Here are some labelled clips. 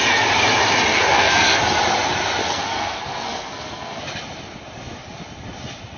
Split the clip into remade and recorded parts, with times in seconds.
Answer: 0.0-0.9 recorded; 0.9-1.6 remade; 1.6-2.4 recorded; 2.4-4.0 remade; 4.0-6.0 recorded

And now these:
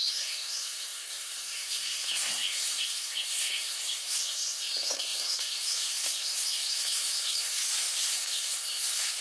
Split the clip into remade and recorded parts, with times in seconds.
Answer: 0.0-9.2 remade